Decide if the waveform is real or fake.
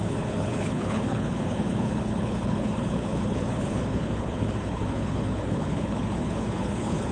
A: fake